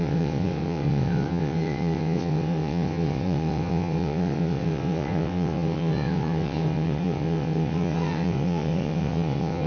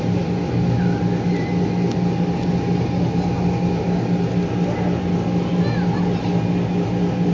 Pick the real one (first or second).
second